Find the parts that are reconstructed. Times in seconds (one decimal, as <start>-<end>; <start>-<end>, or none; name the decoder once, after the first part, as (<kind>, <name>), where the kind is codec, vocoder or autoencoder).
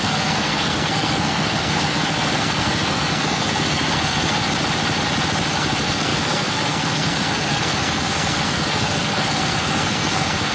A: 0.0-4.4 (codec, SNAC); 5.5-10.5